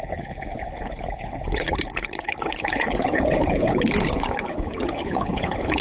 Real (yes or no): no